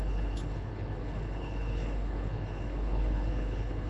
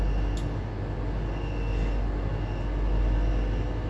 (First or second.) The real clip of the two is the second